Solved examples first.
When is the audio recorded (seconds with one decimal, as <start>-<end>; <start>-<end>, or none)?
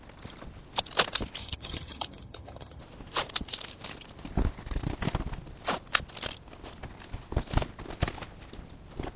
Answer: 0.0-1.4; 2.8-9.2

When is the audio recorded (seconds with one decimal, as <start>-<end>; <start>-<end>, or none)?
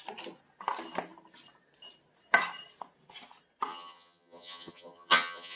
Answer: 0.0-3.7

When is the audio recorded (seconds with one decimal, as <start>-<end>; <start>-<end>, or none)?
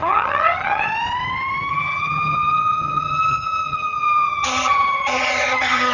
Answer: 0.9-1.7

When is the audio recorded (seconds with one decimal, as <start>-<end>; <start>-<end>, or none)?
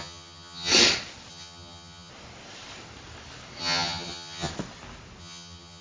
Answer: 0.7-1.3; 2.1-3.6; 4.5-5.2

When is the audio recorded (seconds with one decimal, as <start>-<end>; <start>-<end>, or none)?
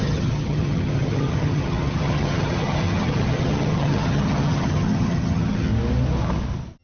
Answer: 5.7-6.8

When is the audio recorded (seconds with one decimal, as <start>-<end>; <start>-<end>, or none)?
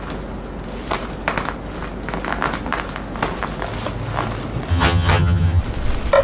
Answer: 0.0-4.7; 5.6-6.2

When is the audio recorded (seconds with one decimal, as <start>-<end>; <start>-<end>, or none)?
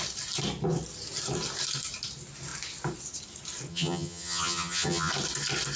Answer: 0.0-3.7; 5.1-5.8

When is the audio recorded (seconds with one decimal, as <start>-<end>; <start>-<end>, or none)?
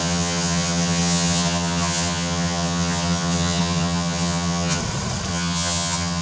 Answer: 4.8-5.3